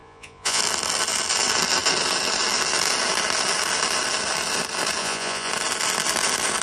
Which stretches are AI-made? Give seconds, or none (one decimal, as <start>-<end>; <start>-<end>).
0.0-0.6; 5.0-5.5